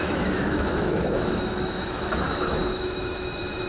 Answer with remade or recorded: remade